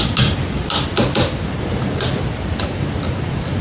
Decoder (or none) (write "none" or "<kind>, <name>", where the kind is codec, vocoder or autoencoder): none